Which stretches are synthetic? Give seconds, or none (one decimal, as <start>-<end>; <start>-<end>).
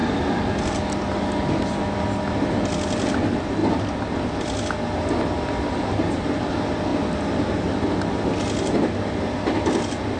none